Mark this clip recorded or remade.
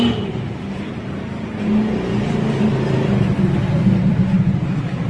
remade